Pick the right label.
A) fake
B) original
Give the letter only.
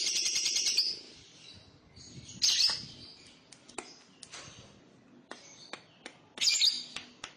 B